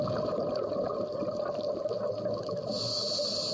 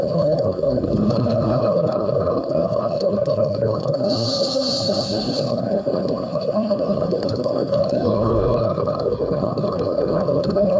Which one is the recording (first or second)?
first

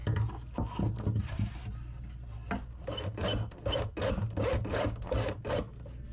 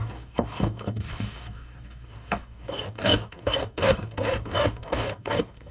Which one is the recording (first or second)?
first